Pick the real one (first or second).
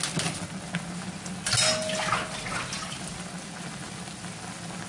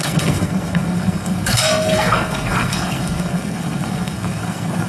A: first